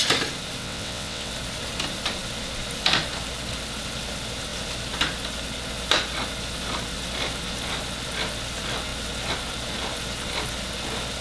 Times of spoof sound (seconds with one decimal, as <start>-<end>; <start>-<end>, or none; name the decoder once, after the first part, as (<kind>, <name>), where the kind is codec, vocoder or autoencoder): 0.6-1.3 (vocoder, WaveNeXt)